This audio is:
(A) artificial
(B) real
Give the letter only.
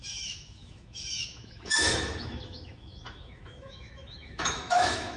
A